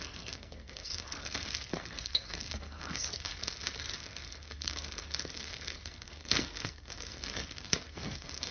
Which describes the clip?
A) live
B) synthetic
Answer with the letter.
B